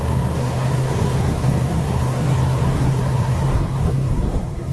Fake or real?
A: fake